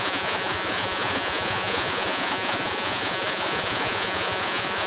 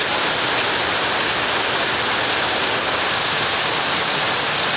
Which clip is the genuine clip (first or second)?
second